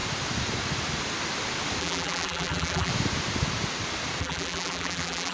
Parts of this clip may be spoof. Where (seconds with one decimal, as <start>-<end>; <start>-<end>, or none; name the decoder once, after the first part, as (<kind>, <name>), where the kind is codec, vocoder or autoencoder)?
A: 1.8-2.9 (vocoder, BigVGAN v2); 4.2-5.3